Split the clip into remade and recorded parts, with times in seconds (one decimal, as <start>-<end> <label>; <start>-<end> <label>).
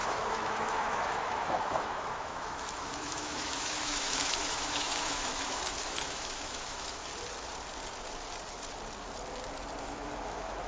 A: 0.0-7.1 remade; 7.1-9.8 recorded; 9.8-10.7 remade